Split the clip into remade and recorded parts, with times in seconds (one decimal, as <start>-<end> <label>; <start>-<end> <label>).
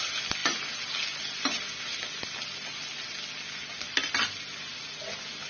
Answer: 0.0-5.5 recorded